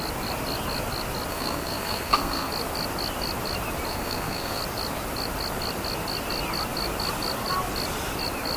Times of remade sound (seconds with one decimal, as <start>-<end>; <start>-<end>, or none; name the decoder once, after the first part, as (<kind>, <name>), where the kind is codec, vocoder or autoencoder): 1.3-2.5 (codec, SNAC); 3.9-4.6